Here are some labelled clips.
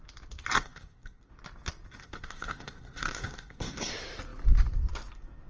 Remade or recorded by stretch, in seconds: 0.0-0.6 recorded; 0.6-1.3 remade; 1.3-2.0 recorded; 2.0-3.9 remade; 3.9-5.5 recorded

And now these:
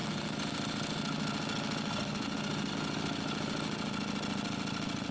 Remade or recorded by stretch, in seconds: 0.0-5.1 recorded

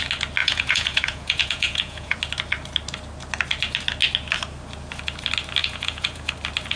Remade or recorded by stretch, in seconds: 0.0-0.4 recorded; 0.4-2.2 remade; 2.2-5.6 recorded; 5.6-6.3 remade; 6.3-6.8 recorded

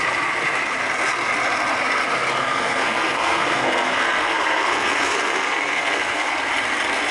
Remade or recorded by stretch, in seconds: 0.0-2.4 recorded; 2.4-6.3 remade; 6.3-7.1 recorded